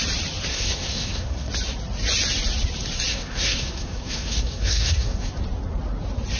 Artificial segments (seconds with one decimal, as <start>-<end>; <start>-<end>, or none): 0.5-1.5; 3.1-5.3